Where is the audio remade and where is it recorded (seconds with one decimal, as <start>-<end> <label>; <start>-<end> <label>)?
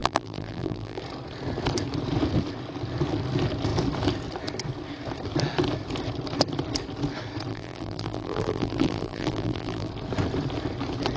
0.0-1.0 remade; 1.0-7.5 recorded; 7.5-9.9 remade; 9.9-11.2 recorded